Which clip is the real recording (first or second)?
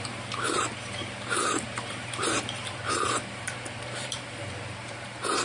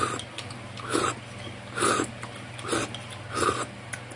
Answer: second